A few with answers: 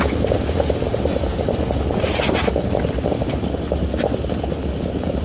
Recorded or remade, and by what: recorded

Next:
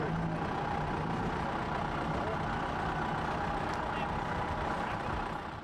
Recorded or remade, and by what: recorded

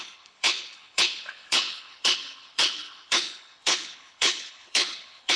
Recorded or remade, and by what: remade, codec, HILCodec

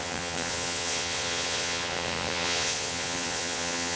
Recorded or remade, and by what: remade, vocoder, Vocos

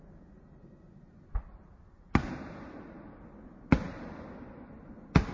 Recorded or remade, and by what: recorded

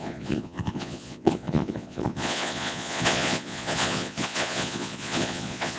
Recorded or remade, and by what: remade, vocoder, Vocos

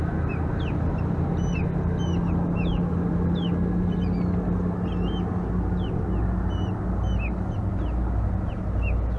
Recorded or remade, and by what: recorded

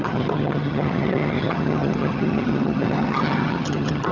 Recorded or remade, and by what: remade, vocoder, HiFi-GAN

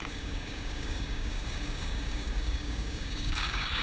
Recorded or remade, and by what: remade, codec, DAC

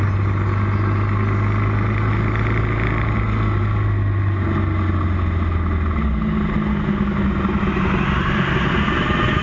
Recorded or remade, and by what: recorded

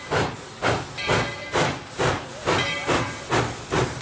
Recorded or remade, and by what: recorded